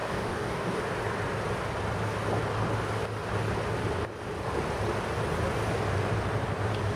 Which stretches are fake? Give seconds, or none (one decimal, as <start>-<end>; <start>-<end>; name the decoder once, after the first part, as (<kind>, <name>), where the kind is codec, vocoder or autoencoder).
0.0-0.8 (codec, DAC)